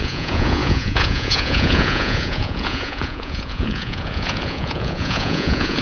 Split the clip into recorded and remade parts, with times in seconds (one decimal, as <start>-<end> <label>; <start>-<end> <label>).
0.0-5.8 remade